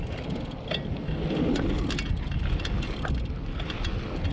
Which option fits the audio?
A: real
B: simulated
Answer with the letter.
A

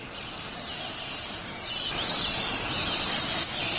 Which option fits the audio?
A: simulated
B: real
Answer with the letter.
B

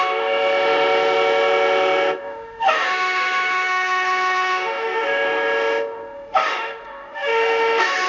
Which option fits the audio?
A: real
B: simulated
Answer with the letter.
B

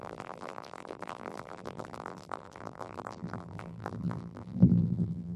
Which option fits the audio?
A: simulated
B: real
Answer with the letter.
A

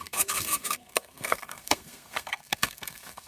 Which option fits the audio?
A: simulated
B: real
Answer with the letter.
A